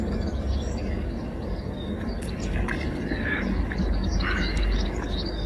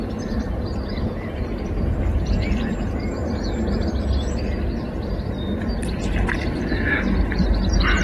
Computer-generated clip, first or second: first